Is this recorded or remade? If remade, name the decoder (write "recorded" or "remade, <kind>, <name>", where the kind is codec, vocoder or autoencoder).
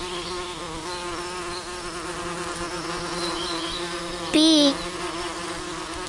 recorded